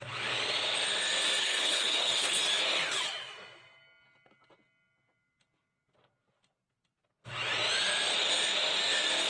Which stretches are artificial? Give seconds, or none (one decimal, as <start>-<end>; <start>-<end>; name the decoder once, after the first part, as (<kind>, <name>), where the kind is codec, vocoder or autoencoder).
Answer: 1.4-2.4 (codec, HILCodec)